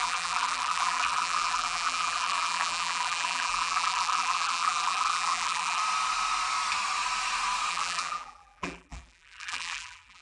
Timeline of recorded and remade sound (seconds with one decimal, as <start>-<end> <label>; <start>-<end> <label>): 0.0-5.8 remade; 5.8-7.7 recorded; 7.7-10.2 remade